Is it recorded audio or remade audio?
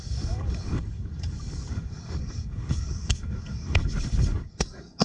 remade